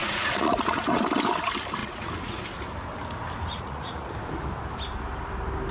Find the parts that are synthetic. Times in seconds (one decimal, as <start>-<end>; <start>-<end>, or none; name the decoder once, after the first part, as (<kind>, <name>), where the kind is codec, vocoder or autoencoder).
0.0-1.0 (vocoder, Vocos); 1.8-2.4; 3.5-4.1